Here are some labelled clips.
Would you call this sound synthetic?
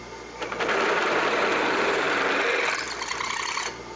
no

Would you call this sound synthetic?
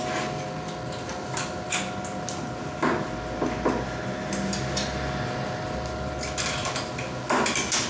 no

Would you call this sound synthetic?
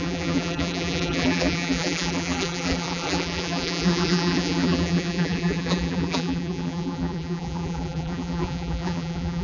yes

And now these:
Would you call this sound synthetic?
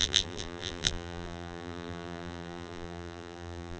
yes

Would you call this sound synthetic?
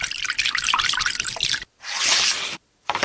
yes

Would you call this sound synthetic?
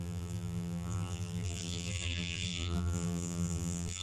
yes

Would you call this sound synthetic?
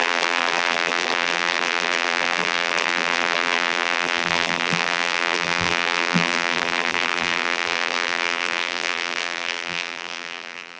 yes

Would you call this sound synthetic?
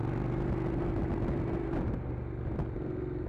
no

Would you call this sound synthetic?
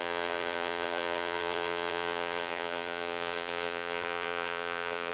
yes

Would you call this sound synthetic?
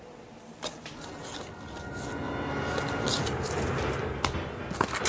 no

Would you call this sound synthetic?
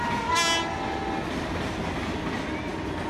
no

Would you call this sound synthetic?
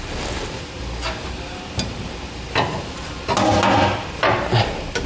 no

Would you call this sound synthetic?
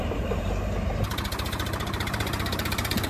yes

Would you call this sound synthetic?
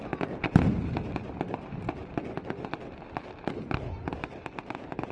yes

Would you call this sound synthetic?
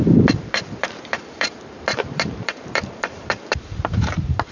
yes